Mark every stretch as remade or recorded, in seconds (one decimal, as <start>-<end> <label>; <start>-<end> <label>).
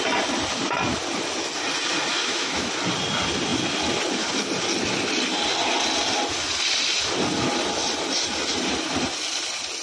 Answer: 0.0-2.1 recorded; 2.1-2.7 remade; 2.7-9.8 recorded